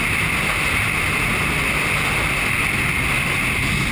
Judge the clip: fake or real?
real